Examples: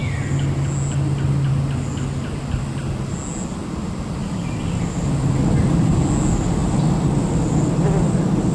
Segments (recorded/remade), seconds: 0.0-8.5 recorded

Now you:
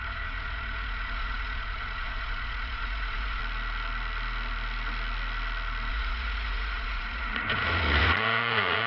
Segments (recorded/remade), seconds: 0.0-3.4 remade; 3.4-5.9 recorded; 5.9-8.9 remade

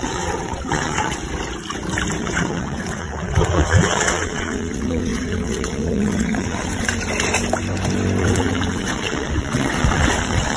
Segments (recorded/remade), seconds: 0.0-1.2 remade; 1.2-2.2 recorded; 2.2-6.9 remade; 6.9-8.2 recorded; 8.2-10.6 remade

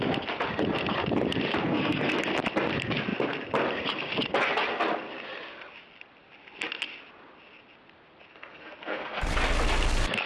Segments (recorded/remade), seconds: 0.0-1.6 recorded; 1.6-2.2 remade; 2.2-8.3 recorded; 8.3-9.3 remade; 9.3-10.3 recorded

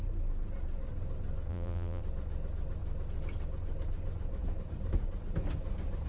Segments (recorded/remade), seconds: 0.0-1.5 recorded; 1.5-2.0 remade; 2.0-6.1 recorded